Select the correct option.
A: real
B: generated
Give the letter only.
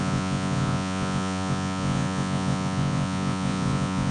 B